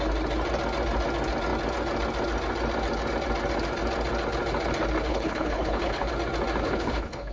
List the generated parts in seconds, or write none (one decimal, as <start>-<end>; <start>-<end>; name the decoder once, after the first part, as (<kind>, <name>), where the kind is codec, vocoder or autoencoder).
5.1-6.1 (codec, HILCodec); 6.6-7.3